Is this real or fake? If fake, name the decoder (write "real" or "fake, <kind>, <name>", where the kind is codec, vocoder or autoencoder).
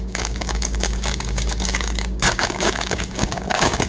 fake, codec, DAC